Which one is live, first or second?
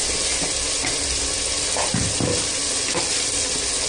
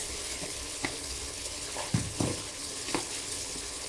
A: first